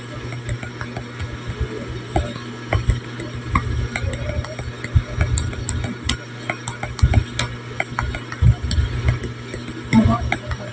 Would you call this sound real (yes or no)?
yes